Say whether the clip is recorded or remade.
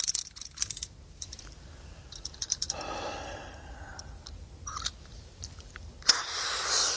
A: remade